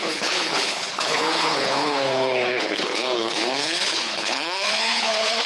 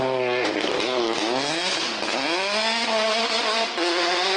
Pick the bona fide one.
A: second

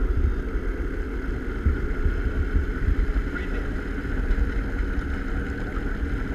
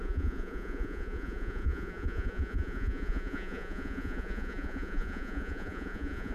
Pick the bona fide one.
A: first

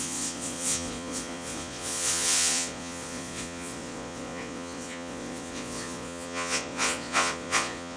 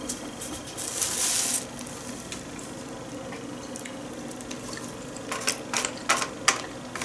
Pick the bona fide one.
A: second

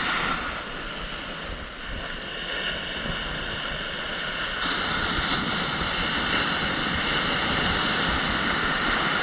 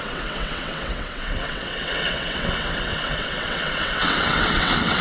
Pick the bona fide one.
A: first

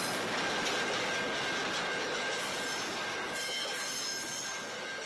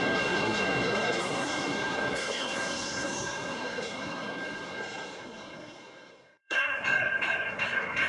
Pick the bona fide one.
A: first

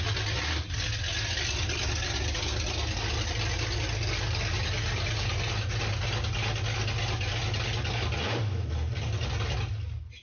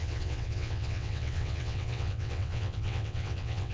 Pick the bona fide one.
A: first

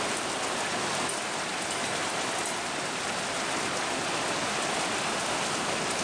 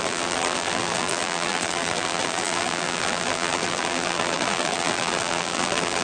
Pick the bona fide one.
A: first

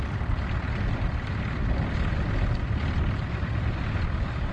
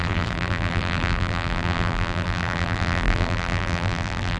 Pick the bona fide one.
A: first